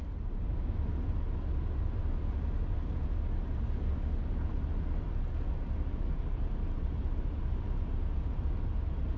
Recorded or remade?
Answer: recorded